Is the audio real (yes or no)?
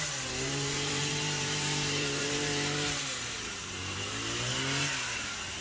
no